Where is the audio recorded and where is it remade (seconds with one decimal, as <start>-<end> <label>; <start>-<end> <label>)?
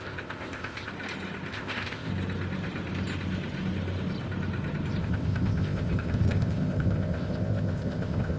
0.0-0.9 remade; 0.9-1.5 recorded; 1.5-2.1 remade; 2.1-5.0 recorded; 5.0-8.4 remade